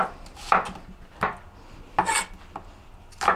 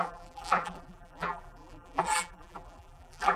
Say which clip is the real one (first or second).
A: first